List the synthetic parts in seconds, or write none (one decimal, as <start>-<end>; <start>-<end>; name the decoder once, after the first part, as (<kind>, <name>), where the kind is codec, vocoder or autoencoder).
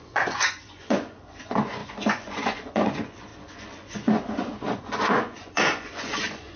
0.0-6.6 (vocoder, Vocos)